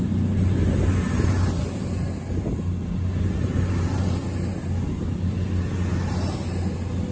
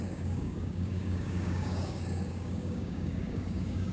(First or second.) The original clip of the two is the first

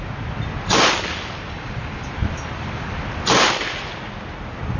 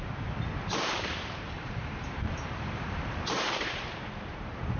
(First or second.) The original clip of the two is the first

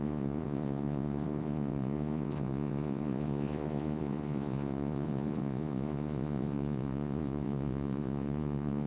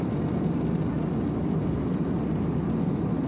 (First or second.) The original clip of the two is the second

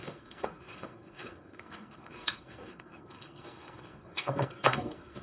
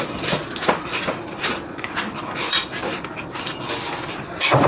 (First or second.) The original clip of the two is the second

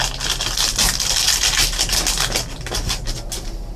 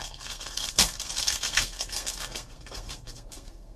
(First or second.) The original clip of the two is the first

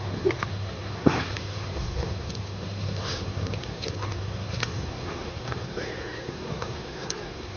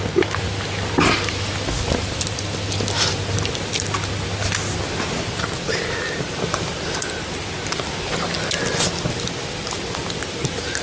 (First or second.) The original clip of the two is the second